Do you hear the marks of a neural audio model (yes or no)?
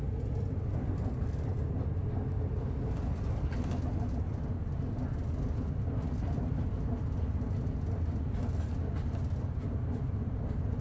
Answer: no